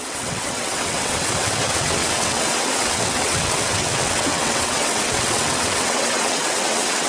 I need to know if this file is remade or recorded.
remade